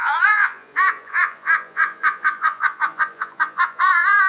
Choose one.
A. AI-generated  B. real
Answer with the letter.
A